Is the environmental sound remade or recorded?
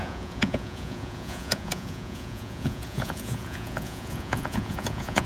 remade